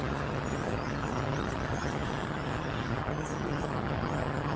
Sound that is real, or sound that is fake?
fake